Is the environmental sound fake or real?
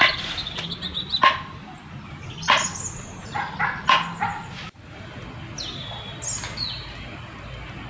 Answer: real